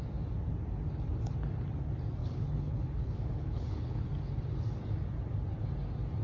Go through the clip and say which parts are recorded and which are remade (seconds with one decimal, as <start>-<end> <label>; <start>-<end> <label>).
0.0-2.2 recorded; 2.2-4.1 remade; 4.1-6.2 recorded